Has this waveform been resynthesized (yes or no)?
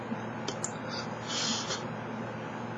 no